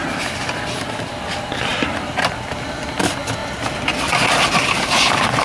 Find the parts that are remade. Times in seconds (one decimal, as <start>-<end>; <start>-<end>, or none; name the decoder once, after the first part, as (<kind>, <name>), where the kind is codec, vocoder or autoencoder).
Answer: none